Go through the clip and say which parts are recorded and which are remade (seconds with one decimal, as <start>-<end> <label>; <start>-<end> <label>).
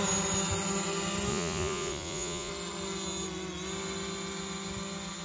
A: 0.0-1.3 recorded; 1.3-2.5 remade; 2.5-5.2 recorded